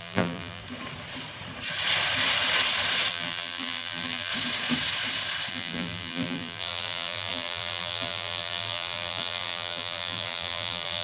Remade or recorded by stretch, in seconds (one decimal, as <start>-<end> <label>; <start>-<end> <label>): 0.0-0.6 remade; 0.6-3.1 recorded; 3.1-4.3 remade; 4.3-5.5 recorded; 5.5-11.0 remade